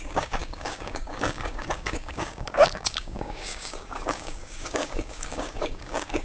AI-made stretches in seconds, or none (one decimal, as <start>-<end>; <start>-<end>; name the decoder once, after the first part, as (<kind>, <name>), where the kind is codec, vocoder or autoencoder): 0.0-6.2 (codec, DAC)

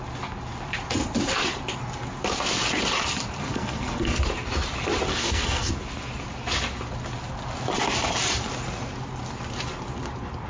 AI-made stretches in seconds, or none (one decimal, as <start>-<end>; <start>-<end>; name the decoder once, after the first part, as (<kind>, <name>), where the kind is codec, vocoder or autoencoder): 3.4-4.2 (codec, SNAC); 5.1-5.7

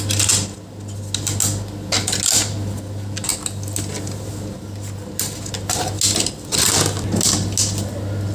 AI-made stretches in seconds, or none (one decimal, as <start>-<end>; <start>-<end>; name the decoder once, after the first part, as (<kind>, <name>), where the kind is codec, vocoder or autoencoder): none

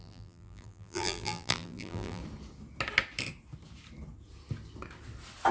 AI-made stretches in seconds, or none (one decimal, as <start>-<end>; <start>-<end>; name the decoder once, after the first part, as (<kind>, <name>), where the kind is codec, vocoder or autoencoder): 0.0-2.2 (vocoder, BigVGAN v2)

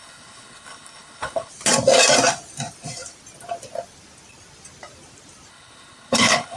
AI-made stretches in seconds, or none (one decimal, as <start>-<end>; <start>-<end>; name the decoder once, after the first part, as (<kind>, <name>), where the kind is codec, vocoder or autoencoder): 0.0-1.5 (codec, HILCodec); 5.5-6.6